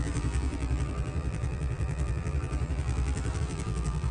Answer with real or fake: fake